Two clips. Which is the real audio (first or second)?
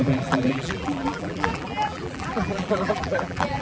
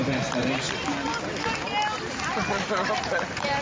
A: second